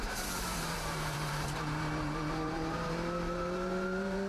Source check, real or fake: fake